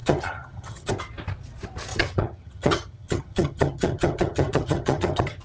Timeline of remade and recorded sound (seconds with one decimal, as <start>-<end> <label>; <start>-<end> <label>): 0.0-0.9 remade; 0.9-1.9 recorded; 1.9-5.4 remade